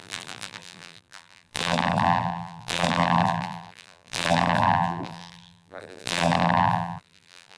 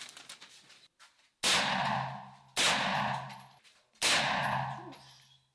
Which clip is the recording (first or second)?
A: second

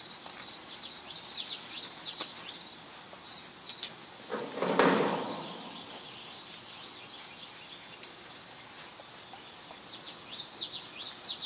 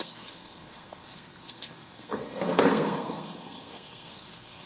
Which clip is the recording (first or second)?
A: first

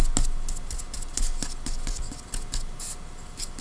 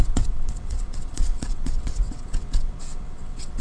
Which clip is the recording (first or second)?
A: first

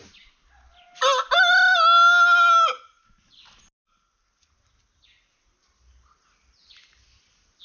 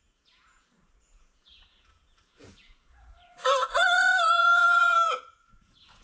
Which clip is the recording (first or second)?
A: first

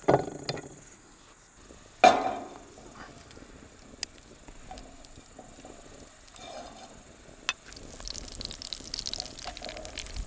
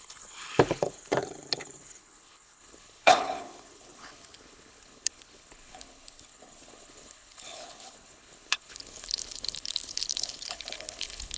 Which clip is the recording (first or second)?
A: first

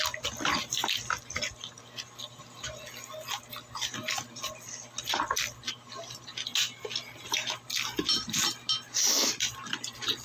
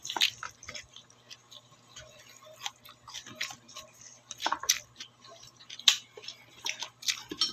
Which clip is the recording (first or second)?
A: first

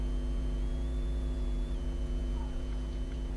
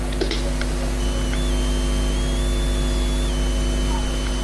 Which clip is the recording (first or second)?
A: second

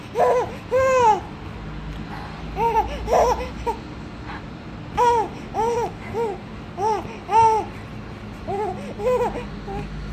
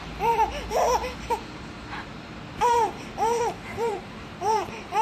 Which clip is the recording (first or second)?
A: first